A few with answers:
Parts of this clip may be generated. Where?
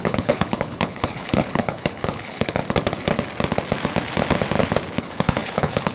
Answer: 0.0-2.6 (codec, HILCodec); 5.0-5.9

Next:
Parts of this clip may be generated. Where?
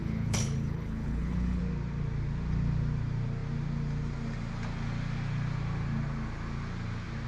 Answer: 0.0-1.6 (codec, HILCodec)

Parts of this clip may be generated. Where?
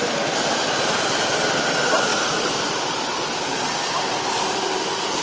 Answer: none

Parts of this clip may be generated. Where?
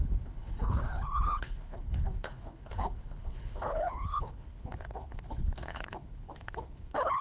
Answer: 0.0-7.2 (codec, HILCodec)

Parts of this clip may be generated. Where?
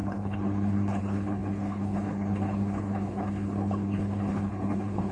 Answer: 0.0-5.1 (codec, HILCodec)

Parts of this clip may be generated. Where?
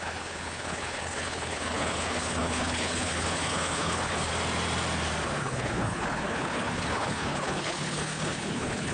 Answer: 0.0-4.3 (codec, HILCodec); 5.4-8.9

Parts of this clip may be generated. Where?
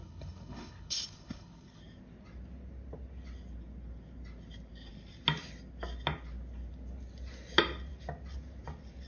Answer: 0.0-1.8 (codec, HILCodec)